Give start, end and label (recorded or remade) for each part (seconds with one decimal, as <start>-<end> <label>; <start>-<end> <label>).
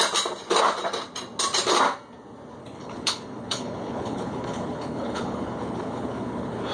0.0-2.6 recorded; 2.6-6.7 remade